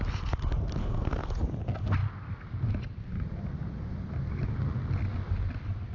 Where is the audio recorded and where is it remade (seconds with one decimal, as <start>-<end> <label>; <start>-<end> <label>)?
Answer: 0.0-0.8 recorded; 0.8-1.3 remade; 1.3-5.9 recorded